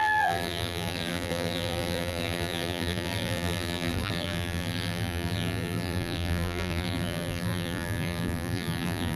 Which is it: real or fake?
fake